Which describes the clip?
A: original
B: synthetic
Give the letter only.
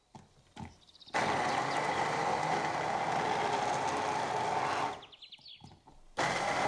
A